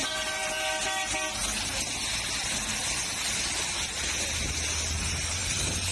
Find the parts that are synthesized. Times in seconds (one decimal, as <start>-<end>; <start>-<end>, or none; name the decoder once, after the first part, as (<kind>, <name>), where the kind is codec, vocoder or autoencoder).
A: 5.4-5.9 (vocoder, BigVGAN v2)